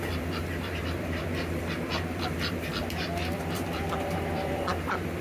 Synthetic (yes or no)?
yes